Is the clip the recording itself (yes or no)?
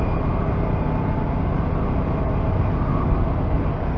yes